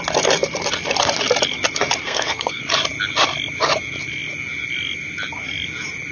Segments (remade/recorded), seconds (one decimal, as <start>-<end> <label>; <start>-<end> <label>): 0.0-2.0 recorded; 2.0-2.6 remade; 2.6-6.1 recorded